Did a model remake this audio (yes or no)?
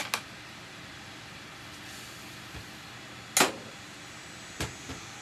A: no